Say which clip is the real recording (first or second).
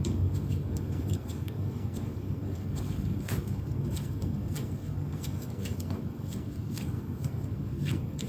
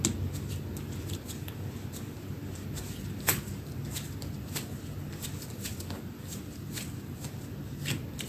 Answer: second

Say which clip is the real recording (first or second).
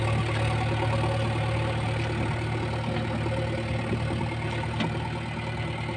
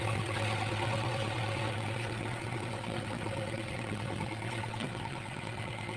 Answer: first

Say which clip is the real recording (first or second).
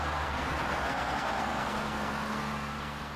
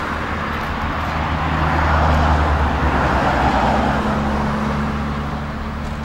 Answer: second